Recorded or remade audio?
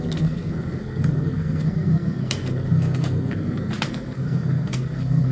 remade